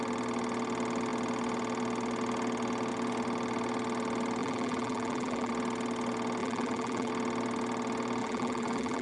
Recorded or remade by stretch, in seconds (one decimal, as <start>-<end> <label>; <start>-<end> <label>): 0.0-4.4 recorded; 4.4-5.5 remade; 5.5-6.4 recorded; 6.4-7.1 remade; 7.1-8.2 recorded; 8.2-9.0 remade